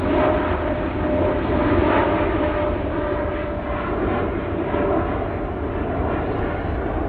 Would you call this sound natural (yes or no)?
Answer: yes